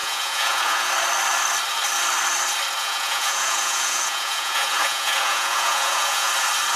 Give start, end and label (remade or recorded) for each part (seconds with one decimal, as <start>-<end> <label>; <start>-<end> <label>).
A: 0.0-0.9 remade; 0.9-2.8 recorded; 2.8-6.3 remade; 6.3-6.8 recorded